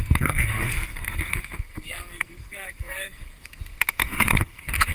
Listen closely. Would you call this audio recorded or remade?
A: remade